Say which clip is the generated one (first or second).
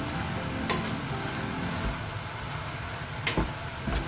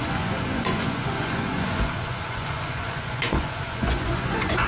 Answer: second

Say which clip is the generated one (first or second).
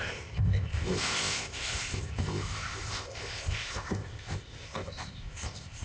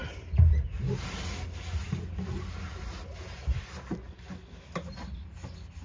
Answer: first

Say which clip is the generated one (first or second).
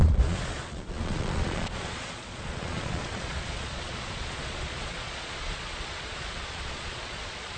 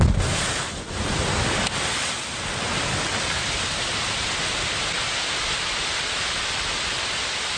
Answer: first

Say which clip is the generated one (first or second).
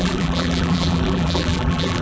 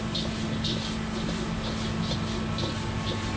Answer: first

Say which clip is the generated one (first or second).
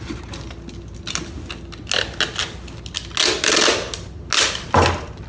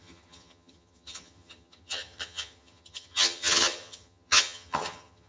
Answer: second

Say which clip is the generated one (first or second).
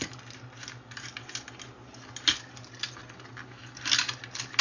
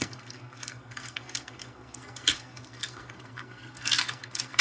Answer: second